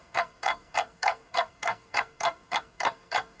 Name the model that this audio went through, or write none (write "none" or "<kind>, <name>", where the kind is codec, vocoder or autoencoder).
codec, SNAC